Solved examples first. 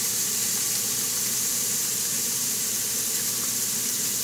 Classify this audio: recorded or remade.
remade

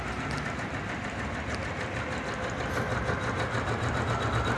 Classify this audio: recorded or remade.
recorded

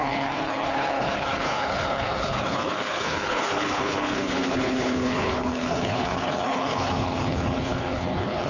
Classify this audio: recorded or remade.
remade